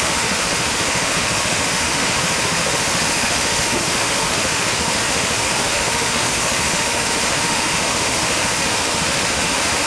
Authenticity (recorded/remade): remade